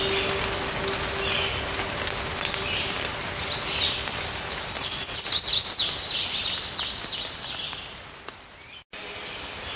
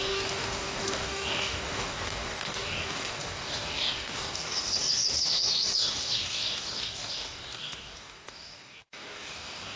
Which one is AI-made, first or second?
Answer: second